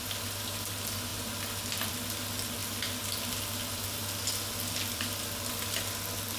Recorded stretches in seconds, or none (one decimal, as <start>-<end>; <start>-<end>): 0.0-6.4